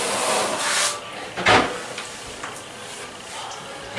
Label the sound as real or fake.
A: real